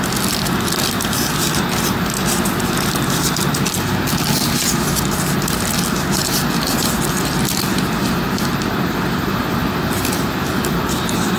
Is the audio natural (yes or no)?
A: yes